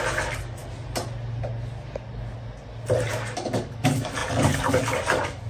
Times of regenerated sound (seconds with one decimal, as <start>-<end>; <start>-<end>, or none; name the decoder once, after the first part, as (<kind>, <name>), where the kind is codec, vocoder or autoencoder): 0.0-0.6 (codec, DAC); 3.1-5.5